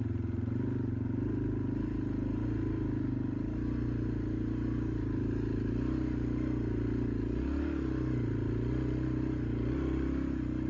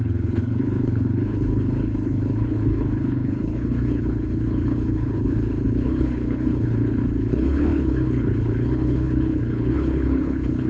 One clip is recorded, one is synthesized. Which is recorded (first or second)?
first